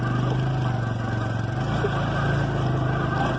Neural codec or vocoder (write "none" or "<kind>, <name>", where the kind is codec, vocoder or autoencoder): none